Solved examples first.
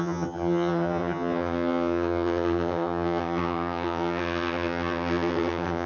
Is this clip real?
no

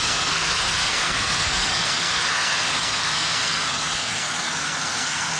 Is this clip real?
no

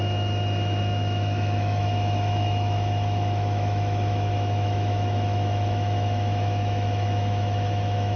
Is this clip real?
no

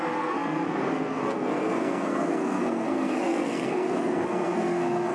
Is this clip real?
no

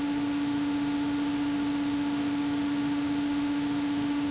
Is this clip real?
no